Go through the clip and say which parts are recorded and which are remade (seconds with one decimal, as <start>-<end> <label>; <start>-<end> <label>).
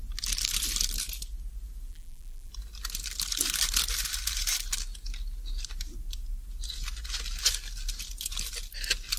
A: 0.0-1.9 recorded; 1.9-2.5 remade; 2.5-9.2 recorded